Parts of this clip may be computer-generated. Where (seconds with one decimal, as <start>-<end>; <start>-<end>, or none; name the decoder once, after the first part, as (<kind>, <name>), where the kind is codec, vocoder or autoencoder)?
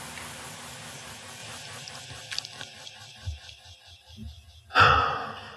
none